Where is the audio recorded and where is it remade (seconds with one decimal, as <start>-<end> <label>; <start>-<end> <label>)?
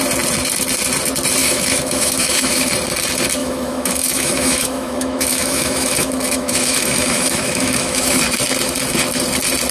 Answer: 0.0-1.4 recorded; 1.4-2.7 remade; 2.7-3.4 recorded; 3.4-8.2 remade; 8.2-9.7 recorded